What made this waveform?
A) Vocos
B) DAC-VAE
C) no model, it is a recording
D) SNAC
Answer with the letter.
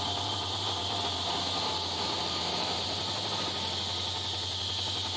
C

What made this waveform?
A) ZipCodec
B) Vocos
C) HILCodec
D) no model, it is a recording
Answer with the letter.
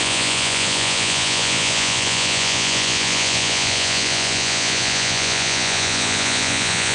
B